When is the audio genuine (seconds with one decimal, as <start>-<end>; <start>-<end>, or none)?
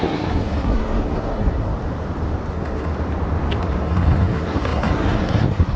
1.7-2.5; 2.9-3.6